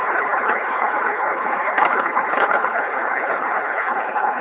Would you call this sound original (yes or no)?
no